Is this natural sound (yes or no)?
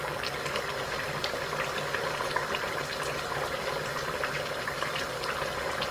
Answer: yes